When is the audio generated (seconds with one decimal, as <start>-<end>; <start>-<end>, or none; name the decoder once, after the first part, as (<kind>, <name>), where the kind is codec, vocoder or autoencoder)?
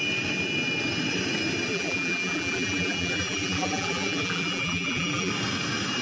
1.7-5.3 (vocoder, BigVGAN v2)